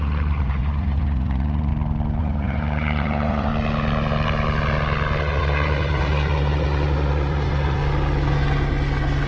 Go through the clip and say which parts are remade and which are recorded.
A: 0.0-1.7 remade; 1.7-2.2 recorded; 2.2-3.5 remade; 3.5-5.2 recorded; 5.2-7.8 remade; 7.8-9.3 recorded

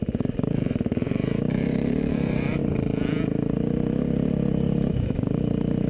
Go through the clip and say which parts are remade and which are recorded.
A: 0.0-2.6 remade; 2.6-4.9 recorded; 4.9-5.9 remade

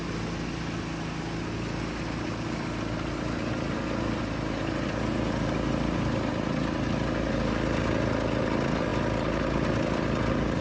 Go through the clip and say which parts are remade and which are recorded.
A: 0.0-10.6 recorded